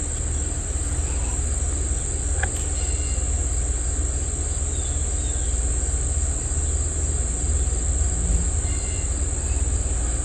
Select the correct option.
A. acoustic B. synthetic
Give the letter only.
A